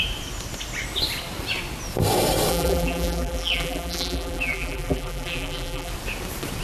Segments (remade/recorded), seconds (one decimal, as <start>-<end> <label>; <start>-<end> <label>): 0.0-2.5 recorded; 2.5-5.9 remade; 5.9-6.6 recorded